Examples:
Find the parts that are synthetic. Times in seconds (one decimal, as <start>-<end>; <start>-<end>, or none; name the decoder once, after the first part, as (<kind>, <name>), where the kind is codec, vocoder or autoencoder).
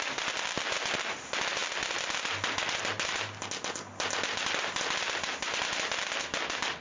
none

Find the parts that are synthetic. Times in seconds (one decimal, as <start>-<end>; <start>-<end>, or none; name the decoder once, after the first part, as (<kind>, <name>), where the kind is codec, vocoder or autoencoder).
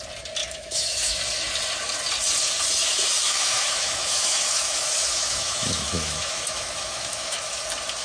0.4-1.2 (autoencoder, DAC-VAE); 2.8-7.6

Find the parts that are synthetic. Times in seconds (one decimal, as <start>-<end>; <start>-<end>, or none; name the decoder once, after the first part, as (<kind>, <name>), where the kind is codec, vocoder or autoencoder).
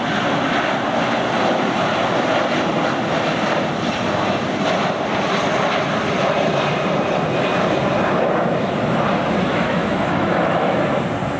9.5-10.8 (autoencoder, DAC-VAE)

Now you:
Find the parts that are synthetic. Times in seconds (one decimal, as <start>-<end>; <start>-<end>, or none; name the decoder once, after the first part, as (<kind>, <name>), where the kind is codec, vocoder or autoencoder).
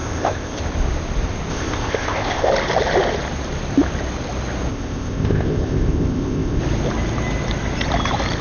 0.0-0.6 (codec, ZipCodec); 1.5-2.5; 4.7-6.6